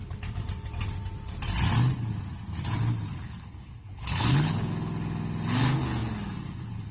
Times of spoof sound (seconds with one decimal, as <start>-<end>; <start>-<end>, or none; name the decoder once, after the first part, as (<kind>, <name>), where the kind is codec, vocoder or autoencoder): 3.1-4.7 (codec, HILCodec)